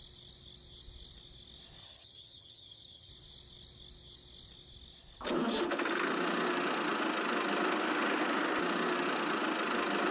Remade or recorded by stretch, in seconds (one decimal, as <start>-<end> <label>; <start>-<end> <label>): 0.0-1.8 recorded; 1.8-3.1 remade; 3.1-10.1 recorded